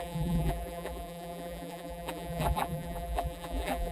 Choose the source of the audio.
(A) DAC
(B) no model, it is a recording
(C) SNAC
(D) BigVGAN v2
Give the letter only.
D